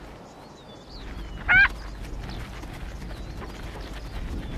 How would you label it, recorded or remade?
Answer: recorded